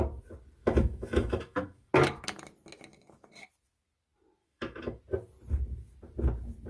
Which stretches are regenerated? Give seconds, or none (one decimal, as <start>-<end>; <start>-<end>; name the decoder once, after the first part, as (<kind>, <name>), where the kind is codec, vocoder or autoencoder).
0.6-1.9 (autoencoder, DAC-VAE); 4.4-5.0